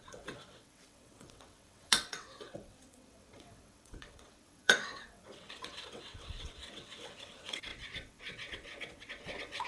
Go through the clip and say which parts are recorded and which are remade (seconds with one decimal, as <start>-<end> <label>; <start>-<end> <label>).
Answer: 0.0-9.7 remade